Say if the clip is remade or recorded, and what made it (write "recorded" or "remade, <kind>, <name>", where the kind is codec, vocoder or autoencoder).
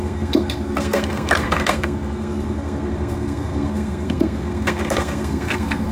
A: remade, codec, SNAC